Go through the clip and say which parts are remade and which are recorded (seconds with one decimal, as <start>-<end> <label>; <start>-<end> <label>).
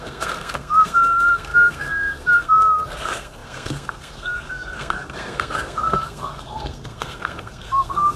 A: 0.0-8.2 remade